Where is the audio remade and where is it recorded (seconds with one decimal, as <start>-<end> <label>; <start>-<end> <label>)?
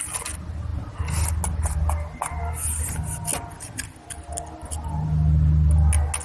0.0-6.2 recorded